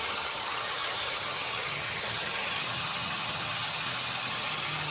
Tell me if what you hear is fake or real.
fake